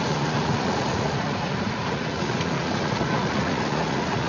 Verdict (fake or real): fake